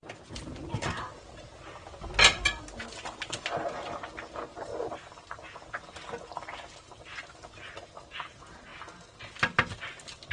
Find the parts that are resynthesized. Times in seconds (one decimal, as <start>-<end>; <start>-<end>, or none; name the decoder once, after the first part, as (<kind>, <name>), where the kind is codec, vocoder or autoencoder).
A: none